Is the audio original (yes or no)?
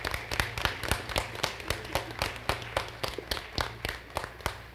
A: yes